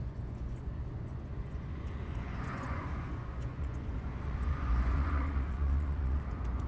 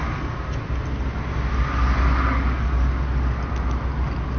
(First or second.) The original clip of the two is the second